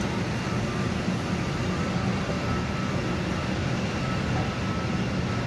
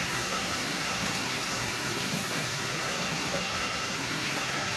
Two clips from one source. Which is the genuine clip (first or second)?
first